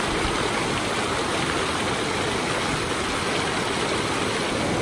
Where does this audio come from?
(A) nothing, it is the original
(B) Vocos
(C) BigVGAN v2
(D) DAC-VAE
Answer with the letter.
A